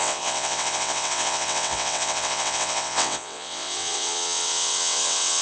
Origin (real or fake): fake